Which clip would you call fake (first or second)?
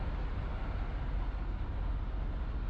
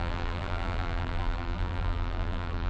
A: second